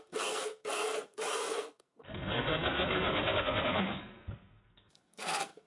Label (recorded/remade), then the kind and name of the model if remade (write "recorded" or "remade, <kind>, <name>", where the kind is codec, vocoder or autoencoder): remade, codec, SNAC